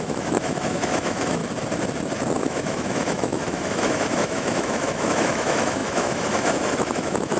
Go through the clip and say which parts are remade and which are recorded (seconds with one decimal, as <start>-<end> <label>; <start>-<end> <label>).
0.0-1.4 remade; 1.4-2.3 recorded; 2.3-7.4 remade